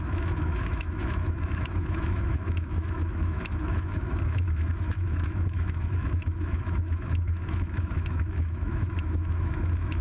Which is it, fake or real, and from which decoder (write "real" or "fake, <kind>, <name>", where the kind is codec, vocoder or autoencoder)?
fake, autoencoder, DAC-VAE